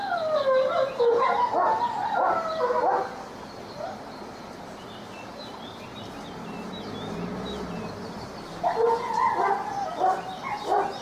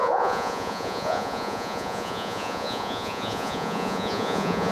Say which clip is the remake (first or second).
second